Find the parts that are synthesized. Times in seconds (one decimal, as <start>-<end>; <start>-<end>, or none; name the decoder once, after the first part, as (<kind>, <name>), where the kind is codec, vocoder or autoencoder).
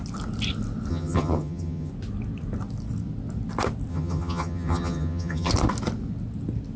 0.9-1.9 (vocoder, HiFi-GAN); 3.9-5.5